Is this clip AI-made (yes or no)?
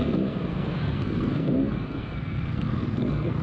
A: yes